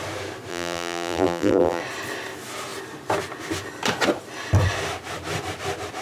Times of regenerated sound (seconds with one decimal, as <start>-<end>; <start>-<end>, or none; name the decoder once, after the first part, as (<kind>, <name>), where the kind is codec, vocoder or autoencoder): 0.5-1.8 (vocoder, BigVGAN v2)